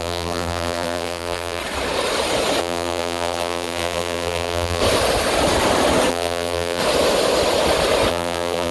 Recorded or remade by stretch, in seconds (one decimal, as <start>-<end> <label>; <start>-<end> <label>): 0.0-1.6 remade; 1.6-2.6 recorded; 2.6-4.8 remade; 4.8-6.1 recorded; 6.1-6.8 remade; 6.8-8.1 recorded; 8.1-8.7 remade